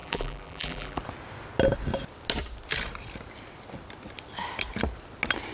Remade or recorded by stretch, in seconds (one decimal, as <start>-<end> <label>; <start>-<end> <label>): 0.0-1.0 remade; 1.0-5.5 recorded